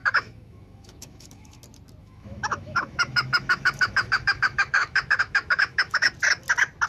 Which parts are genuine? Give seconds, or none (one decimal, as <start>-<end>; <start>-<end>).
1.6-2.0; 6.1-6.9